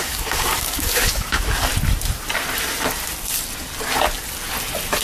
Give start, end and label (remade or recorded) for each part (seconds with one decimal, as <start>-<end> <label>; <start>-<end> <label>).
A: 0.0-1.7 remade; 1.7-5.0 recorded